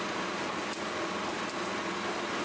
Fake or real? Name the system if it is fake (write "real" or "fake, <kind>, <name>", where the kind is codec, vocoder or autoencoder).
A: real